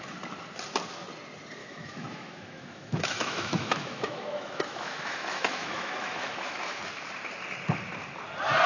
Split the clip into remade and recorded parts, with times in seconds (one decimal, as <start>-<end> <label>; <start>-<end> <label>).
0.0-1.6 recorded; 1.6-6.8 remade; 6.8-8.7 recorded